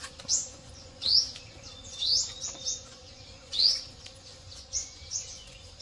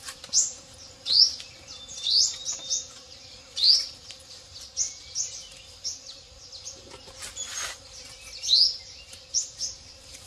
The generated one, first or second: first